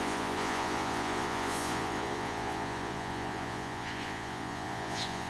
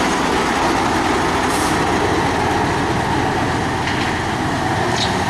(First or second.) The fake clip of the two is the first